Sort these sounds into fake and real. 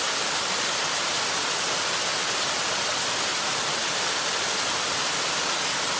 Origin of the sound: real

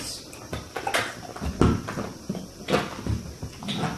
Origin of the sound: real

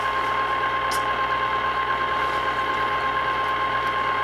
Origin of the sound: real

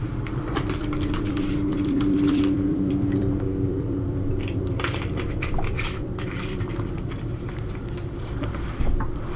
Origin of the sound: fake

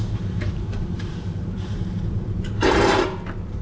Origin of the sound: fake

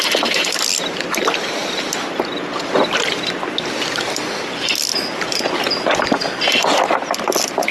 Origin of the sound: real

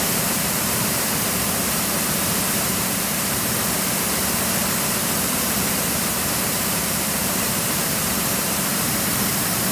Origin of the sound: fake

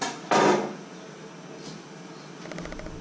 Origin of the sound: real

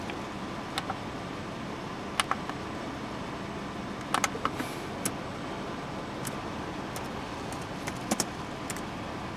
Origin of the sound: real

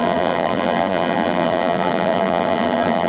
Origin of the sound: fake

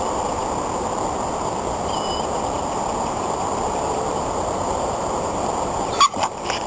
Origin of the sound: fake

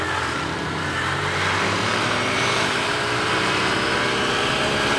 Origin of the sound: fake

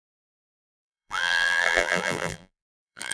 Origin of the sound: fake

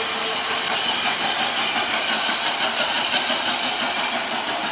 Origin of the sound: real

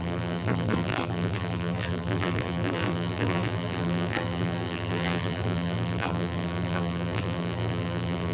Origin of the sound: fake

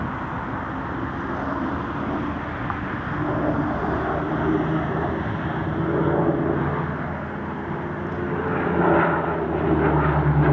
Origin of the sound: real